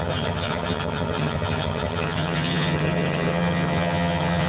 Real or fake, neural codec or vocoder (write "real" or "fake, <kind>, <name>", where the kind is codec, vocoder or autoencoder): fake, vocoder, HiFi-GAN